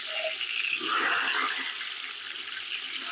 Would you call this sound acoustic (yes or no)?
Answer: yes